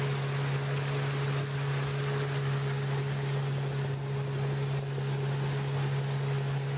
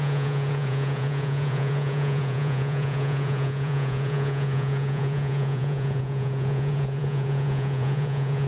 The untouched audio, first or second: first